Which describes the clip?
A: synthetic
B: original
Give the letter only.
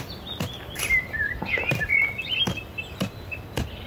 B